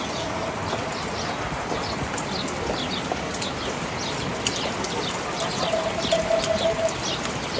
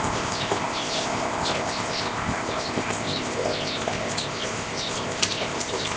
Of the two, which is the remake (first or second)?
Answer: second